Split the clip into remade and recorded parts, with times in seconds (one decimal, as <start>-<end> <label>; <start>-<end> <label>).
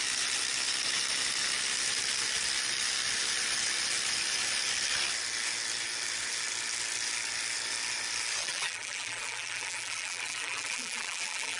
0.0-8.4 recorded; 8.4-11.6 remade